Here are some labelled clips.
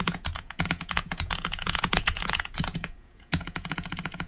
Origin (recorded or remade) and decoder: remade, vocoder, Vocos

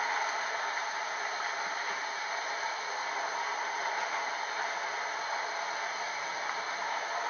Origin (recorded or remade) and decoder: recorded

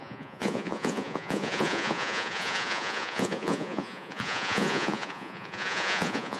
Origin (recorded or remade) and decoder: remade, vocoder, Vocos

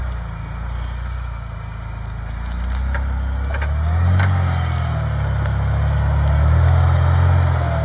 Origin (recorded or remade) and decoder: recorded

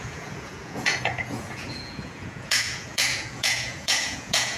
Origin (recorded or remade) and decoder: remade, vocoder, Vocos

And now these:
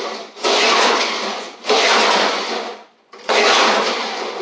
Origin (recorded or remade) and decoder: remade, vocoder, Vocos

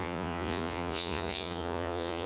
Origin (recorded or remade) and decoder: remade, vocoder, Vocos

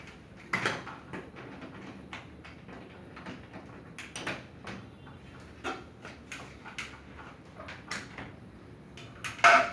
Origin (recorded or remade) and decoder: recorded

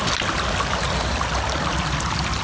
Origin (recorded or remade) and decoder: recorded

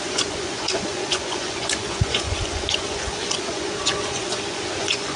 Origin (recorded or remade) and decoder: remade, vocoder, Vocos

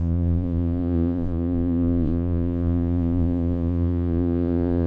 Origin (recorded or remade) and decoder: remade, vocoder, Vocos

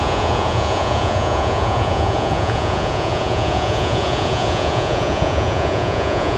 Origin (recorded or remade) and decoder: remade, vocoder, Vocos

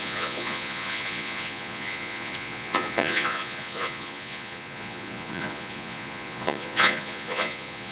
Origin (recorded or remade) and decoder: remade, vocoder, Vocos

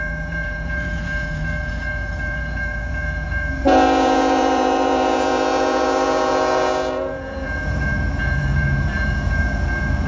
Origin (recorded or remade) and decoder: remade, vocoder, Vocos